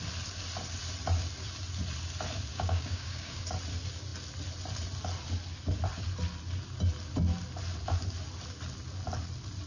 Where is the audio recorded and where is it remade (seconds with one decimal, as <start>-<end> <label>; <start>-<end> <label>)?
0.0-2.5 recorded; 2.5-3.4 remade; 3.4-9.7 recorded